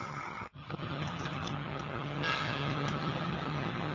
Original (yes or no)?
no